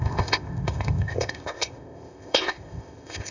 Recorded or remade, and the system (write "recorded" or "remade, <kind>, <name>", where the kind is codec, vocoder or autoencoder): remade, codec, ZipCodec